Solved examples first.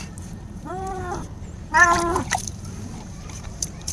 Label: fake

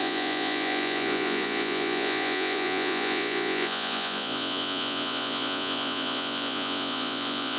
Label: fake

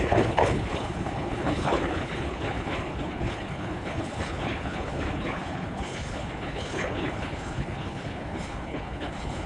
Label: fake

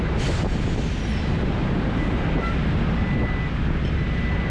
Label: real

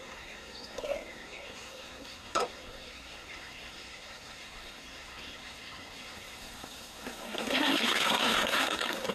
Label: fake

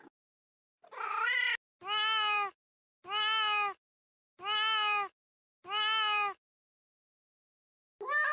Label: real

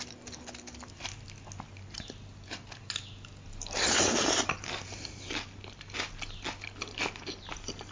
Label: real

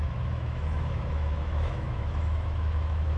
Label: fake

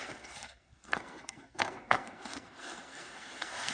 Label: fake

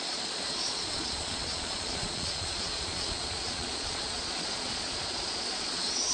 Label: fake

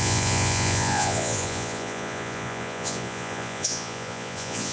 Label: fake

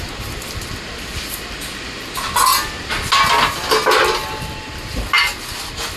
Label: real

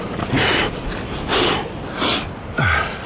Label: real